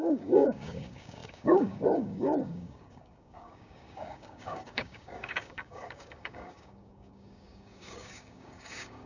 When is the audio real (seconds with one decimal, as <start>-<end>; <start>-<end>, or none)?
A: none